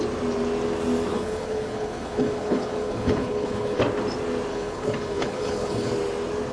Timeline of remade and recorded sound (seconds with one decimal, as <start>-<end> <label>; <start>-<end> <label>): 0.0-1.1 recorded; 1.1-3.8 remade; 3.8-4.5 recorded; 4.5-5.9 remade; 5.9-6.5 recorded